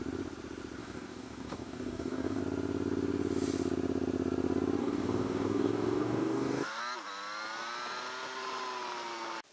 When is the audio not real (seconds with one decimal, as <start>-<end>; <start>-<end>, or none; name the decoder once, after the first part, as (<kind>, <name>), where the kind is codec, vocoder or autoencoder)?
0.8-2.4 (codec, DAC); 4.8-6.8

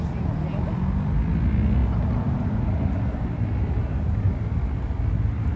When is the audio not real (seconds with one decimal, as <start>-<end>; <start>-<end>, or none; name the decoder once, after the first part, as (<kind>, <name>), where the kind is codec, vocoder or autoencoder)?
none

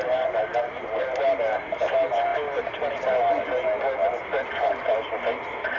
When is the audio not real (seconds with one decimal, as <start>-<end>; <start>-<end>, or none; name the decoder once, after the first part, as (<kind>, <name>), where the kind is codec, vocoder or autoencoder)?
none

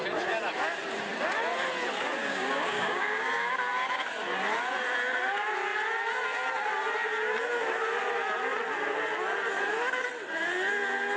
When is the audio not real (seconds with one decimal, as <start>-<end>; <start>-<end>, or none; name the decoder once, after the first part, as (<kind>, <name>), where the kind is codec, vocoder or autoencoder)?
2.2-3.5 (codec, DAC)

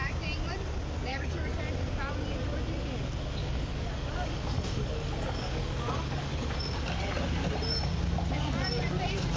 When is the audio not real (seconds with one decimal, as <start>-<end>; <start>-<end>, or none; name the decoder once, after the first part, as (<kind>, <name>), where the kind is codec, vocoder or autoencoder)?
1.1-1.6 (codec, DAC); 3.4-6.3

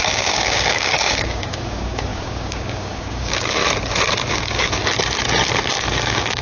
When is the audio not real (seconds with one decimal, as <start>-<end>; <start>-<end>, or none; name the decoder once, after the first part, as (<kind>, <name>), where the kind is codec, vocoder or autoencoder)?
0.0-3.6 (codec, DAC); 4.3-4.8; 5.7-6.4